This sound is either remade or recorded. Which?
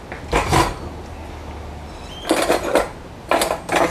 recorded